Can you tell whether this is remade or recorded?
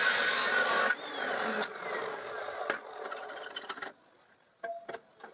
recorded